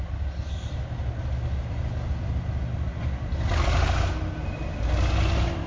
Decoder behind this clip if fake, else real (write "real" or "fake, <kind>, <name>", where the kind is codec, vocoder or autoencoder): real